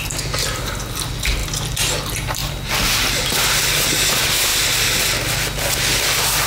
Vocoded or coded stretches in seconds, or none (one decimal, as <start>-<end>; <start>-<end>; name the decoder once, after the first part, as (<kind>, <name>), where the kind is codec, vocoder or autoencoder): 4.5-5.0 (vocoder, BigVGAN v2)